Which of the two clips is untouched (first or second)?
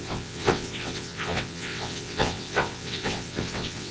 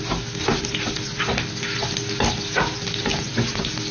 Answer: second